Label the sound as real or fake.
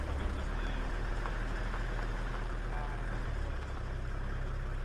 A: real